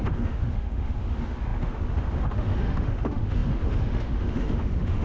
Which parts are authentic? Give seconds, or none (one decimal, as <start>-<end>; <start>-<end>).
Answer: none